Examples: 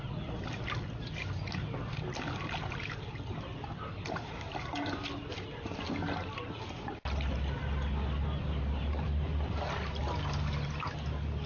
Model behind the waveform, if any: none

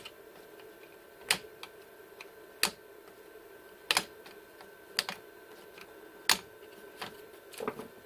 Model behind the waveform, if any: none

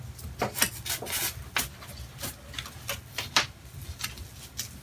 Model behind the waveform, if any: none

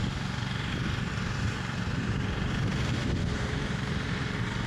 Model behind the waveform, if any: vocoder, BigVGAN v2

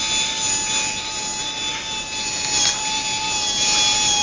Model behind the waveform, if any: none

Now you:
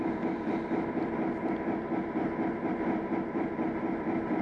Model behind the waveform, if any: vocoder, BigVGAN v2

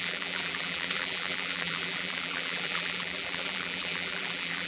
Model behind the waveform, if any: vocoder, BigVGAN v2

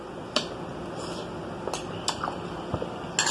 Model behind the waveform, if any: none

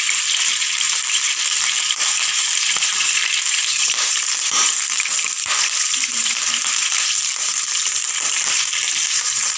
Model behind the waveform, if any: vocoder, BigVGAN v2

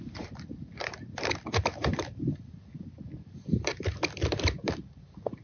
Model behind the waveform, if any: vocoder, BigVGAN v2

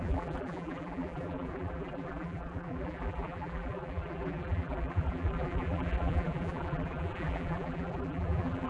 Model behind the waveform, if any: vocoder, BigVGAN v2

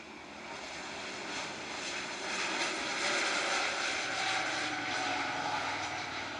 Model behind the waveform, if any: vocoder, BigVGAN v2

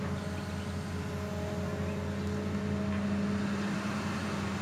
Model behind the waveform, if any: none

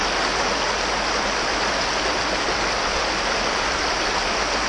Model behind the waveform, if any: none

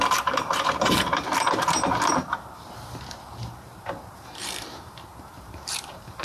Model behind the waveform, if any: vocoder, BigVGAN v2